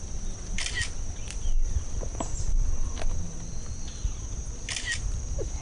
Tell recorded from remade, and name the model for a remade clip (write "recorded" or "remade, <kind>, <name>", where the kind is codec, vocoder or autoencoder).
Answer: recorded